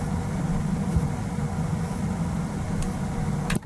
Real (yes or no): yes